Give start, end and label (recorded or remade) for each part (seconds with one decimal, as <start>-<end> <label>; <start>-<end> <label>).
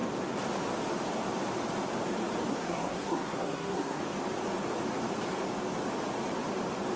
0.0-2.5 recorded; 2.5-4.0 remade; 4.0-7.0 recorded